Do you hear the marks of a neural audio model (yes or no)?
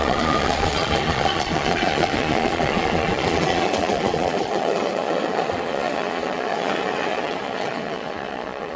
yes